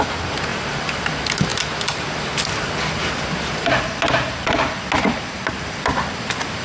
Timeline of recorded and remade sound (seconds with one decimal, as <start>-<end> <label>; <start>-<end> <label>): 0.0-0.5 recorded; 0.5-1.1 remade; 1.1-6.6 recorded